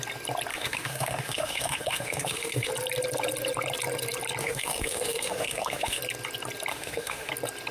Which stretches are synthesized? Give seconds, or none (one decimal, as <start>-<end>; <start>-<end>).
0.5-2.7; 4.4-6.0; 6.7-7.3